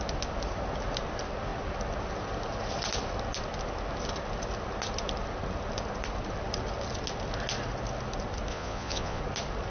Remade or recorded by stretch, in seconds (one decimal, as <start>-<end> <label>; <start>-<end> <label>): 0.0-8.5 recorded; 8.5-9.2 remade; 9.2-9.7 recorded